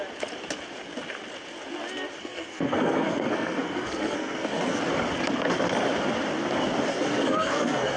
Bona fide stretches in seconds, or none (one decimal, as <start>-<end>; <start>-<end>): 0.0-2.2; 4.8-6.9